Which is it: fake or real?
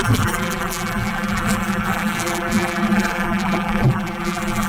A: fake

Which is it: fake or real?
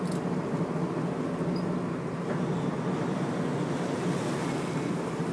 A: real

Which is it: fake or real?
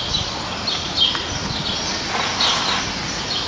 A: real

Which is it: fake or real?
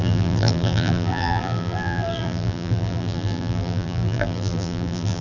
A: fake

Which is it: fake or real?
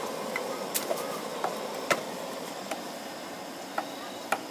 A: real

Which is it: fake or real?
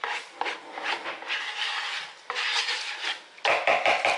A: real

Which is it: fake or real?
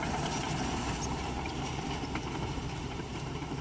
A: fake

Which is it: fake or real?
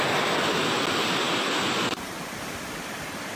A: real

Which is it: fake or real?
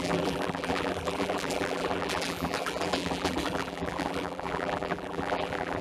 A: fake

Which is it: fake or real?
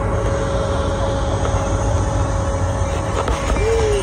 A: real